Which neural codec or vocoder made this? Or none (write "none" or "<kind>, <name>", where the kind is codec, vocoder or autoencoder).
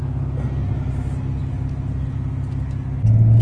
none